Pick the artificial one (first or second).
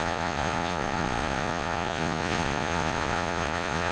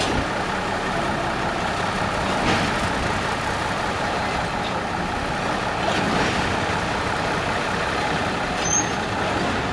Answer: first